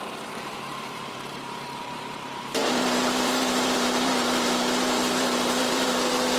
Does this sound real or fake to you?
fake